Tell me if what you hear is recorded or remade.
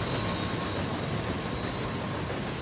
recorded